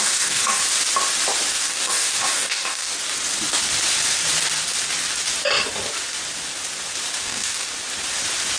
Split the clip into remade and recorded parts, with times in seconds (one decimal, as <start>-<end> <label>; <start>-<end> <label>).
0.0-0.6 remade; 0.6-1.5 recorded; 1.5-2.9 remade; 2.9-7.2 recorded; 7.2-7.7 remade; 7.7-8.6 recorded